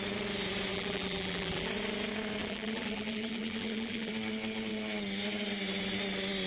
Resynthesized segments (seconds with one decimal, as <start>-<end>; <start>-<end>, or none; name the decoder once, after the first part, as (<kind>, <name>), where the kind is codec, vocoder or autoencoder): 0.7-1.7 (vocoder, BigVGAN v2); 2.4-4.1